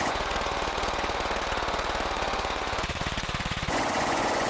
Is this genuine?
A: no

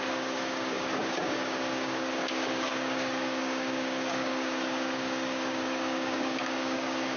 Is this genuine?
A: no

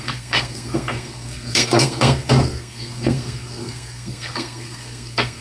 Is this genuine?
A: no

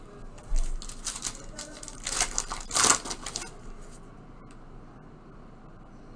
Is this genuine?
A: yes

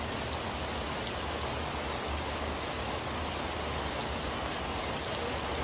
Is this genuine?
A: yes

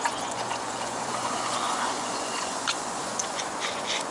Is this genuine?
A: no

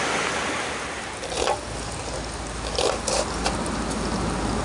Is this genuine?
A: yes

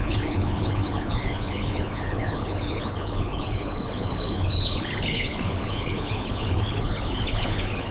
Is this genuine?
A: no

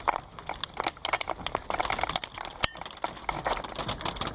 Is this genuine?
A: yes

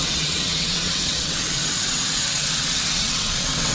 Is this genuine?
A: no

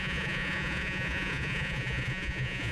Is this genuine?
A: no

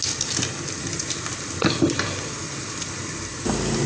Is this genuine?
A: yes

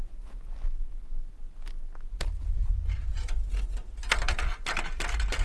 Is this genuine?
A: yes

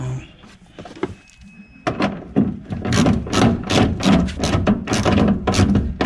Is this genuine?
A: yes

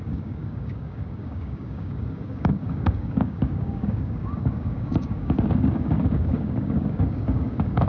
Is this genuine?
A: no